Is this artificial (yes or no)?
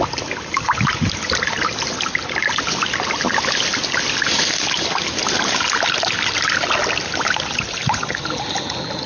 no